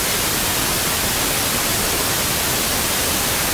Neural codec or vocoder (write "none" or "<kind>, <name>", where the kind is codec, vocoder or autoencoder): none